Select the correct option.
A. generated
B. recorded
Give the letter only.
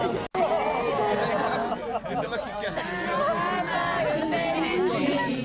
B